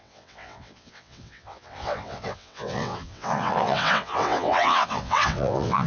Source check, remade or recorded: remade